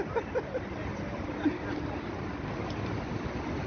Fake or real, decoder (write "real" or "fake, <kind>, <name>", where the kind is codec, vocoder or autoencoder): real